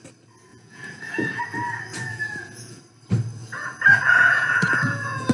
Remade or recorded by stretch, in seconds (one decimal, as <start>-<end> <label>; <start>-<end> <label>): 0.0-0.5 recorded; 0.5-1.4 remade; 1.4-1.9 recorded; 1.9-2.8 remade; 2.8-3.4 recorded; 3.4-5.3 remade